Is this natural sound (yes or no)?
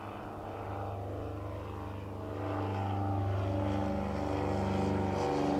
yes